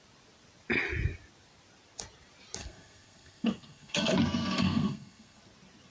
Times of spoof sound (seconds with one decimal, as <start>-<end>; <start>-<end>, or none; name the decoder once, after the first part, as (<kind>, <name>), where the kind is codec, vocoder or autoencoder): 2.6-5.4 (codec, SNAC)